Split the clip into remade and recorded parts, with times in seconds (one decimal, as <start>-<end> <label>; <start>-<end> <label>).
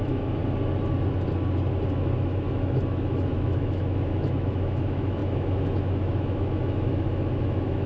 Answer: 0.0-0.4 remade; 0.4-1.9 recorded; 1.9-7.9 remade